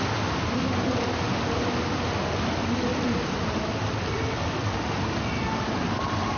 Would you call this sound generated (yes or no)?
no